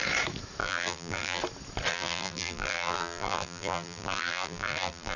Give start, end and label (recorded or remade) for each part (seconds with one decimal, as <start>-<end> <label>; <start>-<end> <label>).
0.0-0.6 recorded; 0.6-1.4 remade; 1.4-1.9 recorded; 1.9-5.2 remade

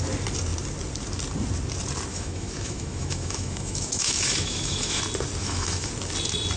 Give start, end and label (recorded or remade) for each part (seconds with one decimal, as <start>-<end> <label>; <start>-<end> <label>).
0.0-2.1 recorded; 2.1-5.0 remade; 5.0-5.4 recorded; 5.4-5.9 remade; 5.9-6.6 recorded

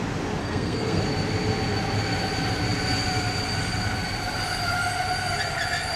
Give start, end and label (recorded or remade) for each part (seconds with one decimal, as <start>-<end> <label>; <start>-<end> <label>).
0.0-0.4 recorded; 0.4-1.0 remade; 1.0-6.0 recorded

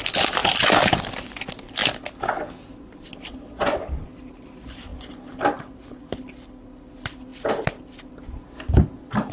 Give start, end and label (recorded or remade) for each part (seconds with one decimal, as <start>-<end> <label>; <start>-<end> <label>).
0.0-0.4 recorded; 0.4-1.3 remade; 1.3-9.3 recorded

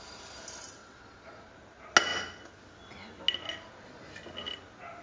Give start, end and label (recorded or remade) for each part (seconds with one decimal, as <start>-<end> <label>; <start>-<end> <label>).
0.0-0.8 recorded; 0.8-1.5 remade; 1.5-5.0 recorded

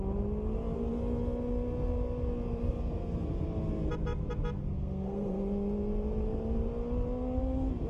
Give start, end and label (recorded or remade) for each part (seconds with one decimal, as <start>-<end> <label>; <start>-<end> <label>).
0.0-4.6 recorded; 4.6-5.4 remade; 5.4-7.9 recorded

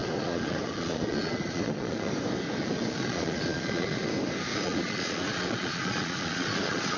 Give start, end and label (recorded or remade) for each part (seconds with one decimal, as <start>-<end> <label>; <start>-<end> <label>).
0.0-2.1 remade; 2.1-2.6 recorded; 2.6-4.1 remade; 4.1-4.5 recorded; 4.5-7.0 remade

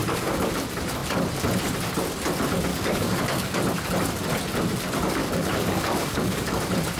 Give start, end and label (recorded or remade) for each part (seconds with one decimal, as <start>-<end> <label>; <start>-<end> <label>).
0.0-0.5 remade; 0.5-2.7 recorded; 2.7-3.6 remade; 3.6-5.2 recorded; 5.2-6.6 remade; 6.6-7.0 recorded